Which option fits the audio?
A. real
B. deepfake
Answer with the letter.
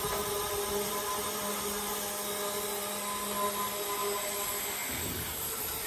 A